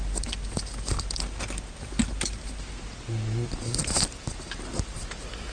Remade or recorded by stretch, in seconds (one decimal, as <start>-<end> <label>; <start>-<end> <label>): 0.0-5.5 recorded